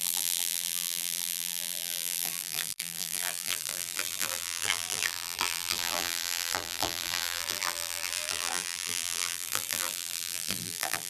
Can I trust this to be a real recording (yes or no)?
no